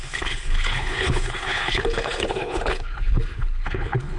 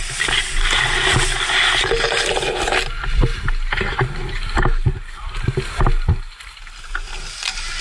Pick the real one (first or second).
second